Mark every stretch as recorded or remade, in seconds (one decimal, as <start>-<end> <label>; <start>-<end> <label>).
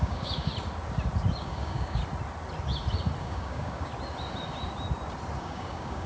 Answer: 0.0-0.5 remade; 0.5-1.4 recorded; 1.4-2.0 remade; 2.0-3.2 recorded; 3.2-3.9 remade; 3.9-5.4 recorded; 5.4-6.1 remade